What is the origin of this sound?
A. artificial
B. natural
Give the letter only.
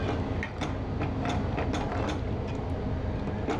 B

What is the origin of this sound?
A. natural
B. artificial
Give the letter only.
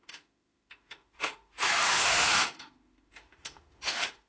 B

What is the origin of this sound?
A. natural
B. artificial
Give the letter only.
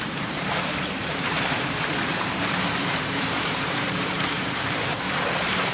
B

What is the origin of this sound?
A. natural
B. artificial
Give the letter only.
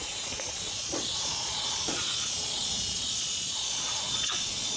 B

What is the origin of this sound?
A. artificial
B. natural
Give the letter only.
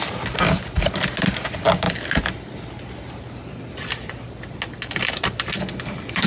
B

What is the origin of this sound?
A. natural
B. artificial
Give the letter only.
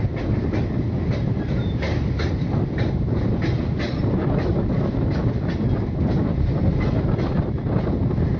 A